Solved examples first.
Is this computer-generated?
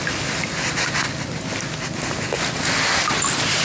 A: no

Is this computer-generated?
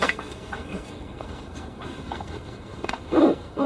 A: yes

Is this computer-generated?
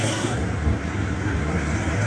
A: yes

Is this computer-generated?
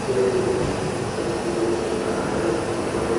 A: no